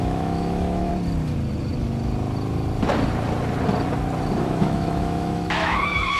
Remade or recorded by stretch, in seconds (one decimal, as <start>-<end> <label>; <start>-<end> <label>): 0.0-0.9 remade; 0.9-4.4 recorded; 4.4-6.2 remade